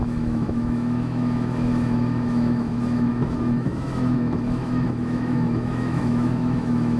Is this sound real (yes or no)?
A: no